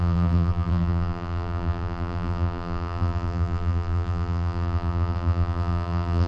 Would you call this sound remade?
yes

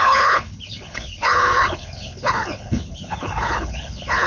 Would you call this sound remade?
yes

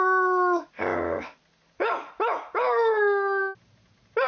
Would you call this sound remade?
no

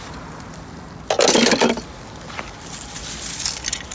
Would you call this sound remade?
no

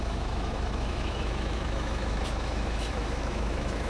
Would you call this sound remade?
yes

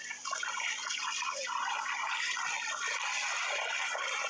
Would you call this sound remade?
no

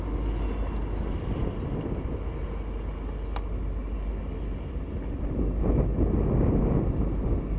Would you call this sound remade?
no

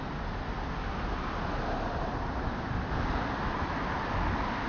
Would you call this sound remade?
no